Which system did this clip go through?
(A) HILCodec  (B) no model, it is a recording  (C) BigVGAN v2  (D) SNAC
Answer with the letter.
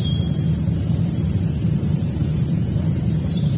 C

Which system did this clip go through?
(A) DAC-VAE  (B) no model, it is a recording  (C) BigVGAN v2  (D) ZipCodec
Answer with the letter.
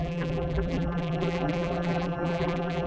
C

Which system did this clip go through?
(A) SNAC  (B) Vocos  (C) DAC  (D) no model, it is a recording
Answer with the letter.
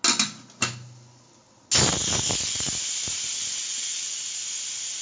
D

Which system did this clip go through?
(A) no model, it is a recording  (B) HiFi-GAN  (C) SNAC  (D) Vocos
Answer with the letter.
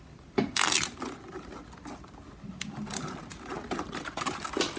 A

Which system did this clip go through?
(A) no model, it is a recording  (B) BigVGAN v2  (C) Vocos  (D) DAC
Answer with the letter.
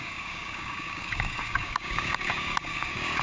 D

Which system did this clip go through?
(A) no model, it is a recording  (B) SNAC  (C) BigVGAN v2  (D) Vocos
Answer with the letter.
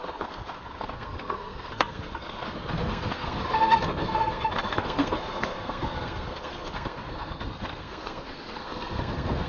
B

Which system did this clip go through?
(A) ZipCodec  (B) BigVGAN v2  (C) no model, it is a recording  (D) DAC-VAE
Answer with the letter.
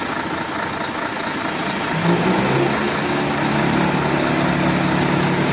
C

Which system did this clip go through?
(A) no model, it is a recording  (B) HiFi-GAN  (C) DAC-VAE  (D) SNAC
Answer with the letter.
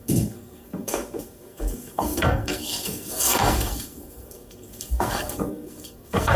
D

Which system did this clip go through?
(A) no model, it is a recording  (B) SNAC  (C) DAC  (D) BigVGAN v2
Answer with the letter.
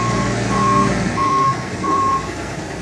B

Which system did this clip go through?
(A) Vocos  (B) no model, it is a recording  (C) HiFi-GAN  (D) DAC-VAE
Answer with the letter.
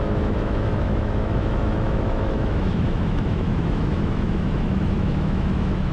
D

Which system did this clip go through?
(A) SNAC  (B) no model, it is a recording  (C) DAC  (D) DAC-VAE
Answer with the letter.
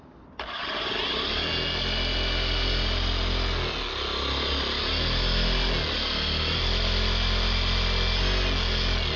B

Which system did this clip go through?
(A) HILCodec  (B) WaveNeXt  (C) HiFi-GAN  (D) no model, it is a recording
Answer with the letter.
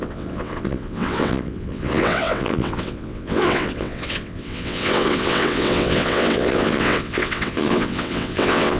B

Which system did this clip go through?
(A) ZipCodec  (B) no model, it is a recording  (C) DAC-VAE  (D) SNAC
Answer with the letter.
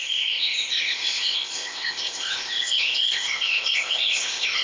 A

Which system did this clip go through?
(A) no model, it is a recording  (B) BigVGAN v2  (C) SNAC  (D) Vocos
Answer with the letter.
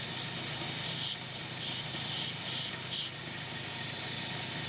A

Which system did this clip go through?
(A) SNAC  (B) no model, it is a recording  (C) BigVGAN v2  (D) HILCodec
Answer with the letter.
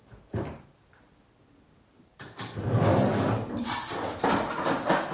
B